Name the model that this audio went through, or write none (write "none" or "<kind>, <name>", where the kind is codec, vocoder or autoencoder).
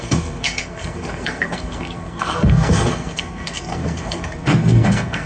codec, SNAC